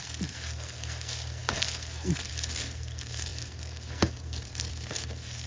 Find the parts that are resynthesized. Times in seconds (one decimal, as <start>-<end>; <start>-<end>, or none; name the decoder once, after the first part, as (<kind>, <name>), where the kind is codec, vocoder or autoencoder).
0.0-5.5 (codec, SNAC)